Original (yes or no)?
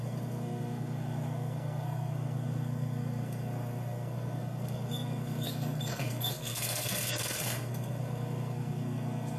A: no